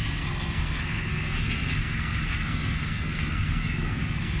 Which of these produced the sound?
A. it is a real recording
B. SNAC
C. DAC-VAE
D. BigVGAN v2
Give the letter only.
B